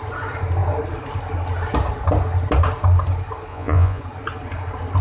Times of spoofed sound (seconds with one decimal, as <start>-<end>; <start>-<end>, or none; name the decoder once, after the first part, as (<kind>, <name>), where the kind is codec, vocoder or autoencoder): 3.5-4.0 (vocoder, Vocos)